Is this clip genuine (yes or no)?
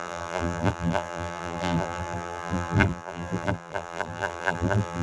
no